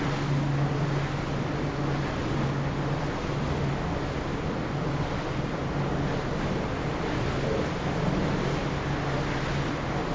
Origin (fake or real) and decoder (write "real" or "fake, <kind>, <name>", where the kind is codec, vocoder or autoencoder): real